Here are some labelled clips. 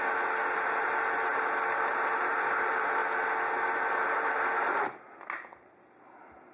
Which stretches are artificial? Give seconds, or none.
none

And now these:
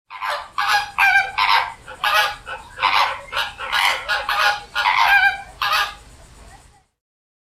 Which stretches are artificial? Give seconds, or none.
0.0-2.2 (vocoder, BigVGAN v2); 3.0-3.9; 4.6-5.1; 5.9-7.5

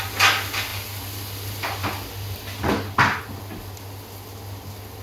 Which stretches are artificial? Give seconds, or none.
0.7-3.2 (vocoder, BigVGAN v2)

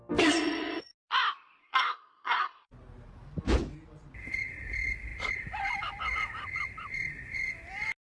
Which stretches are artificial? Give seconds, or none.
1.6-2.7 (codec, SNAC)

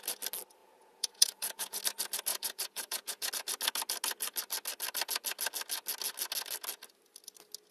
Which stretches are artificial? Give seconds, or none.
0.6-1.8 (vocoder, Vocos); 2.3-3.3

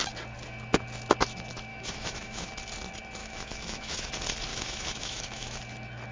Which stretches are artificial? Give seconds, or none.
1.7-2.5 (autoencoder, DAC-VAE); 3.2-4.1; 4.5-5.6

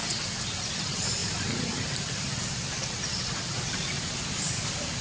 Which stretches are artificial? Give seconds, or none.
0.5-5.0 (vocoder, BigVGAN v2)